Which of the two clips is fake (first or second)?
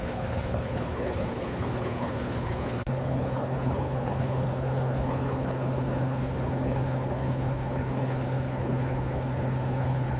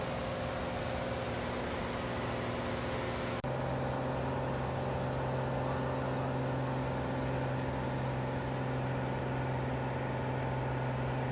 first